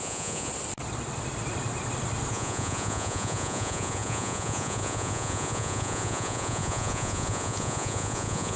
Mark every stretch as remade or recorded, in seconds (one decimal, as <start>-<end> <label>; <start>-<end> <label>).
0.0-0.5 remade; 0.5-2.3 recorded; 2.3-8.6 remade